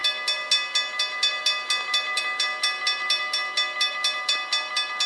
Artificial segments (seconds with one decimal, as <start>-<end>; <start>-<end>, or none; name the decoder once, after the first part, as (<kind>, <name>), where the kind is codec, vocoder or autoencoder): none